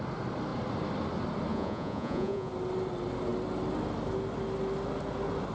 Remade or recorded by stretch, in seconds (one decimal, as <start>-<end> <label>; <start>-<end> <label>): 0.0-1.5 recorded; 1.5-2.5 remade; 2.5-5.5 recorded